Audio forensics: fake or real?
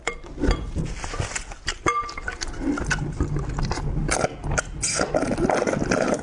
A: real